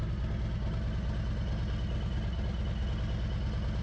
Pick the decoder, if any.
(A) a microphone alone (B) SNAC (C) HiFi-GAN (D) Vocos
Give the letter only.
A